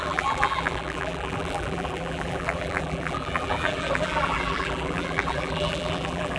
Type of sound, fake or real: fake